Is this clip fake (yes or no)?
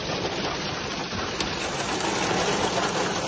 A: no